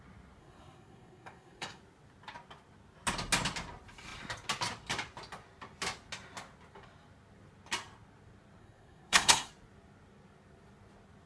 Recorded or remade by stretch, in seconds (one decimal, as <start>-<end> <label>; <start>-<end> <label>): 0.0-0.4 recorded; 0.4-1.8 remade; 1.8-8.6 recorded; 8.6-9.5 remade; 9.5-11.3 recorded